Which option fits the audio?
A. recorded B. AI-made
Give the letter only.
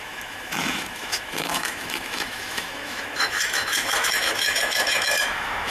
B